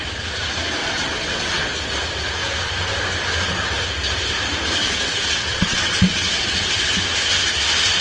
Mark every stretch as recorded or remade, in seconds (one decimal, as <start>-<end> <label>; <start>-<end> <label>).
0.0-0.8 recorded; 0.8-1.7 remade; 1.7-4.8 recorded; 4.8-6.9 remade; 6.9-8.0 recorded